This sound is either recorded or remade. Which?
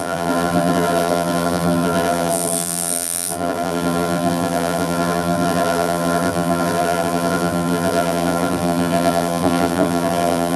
remade